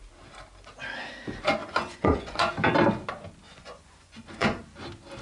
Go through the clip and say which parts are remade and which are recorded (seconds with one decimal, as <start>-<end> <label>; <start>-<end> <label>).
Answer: 0.0-1.6 recorded; 1.6-2.5 remade; 2.5-3.5 recorded; 3.5-4.6 remade; 4.6-5.2 recorded